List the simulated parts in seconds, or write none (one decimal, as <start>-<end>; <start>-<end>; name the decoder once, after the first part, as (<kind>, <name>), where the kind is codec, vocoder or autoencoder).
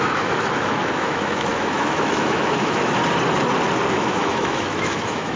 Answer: 0.0-3.0 (autoencoder, DAC-VAE); 3.9-5.4